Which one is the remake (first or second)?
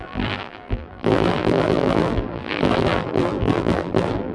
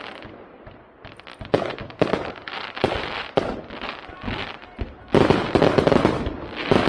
first